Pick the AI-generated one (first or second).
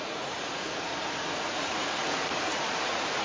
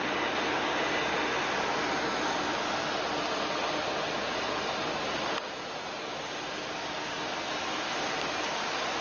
first